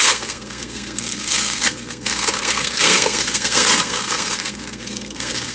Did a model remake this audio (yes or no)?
yes